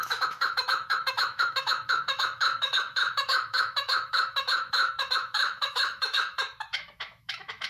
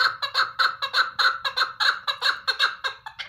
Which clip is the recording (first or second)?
second